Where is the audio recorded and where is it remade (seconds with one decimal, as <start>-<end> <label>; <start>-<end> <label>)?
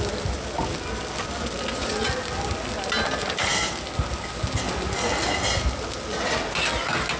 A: 0.0-7.2 recorded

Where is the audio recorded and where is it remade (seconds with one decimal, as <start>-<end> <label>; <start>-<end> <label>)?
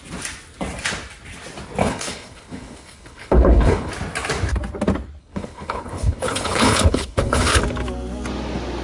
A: 0.0-1.8 recorded; 1.8-3.9 remade; 3.9-5.2 recorded; 5.2-7.6 remade; 7.6-8.8 recorded